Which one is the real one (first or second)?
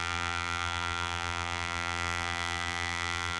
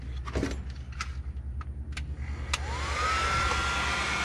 second